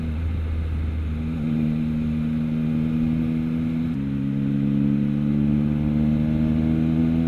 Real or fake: real